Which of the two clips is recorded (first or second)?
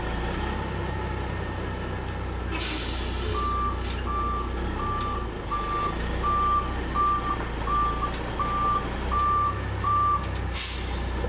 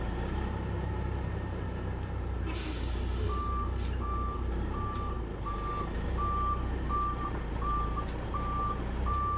first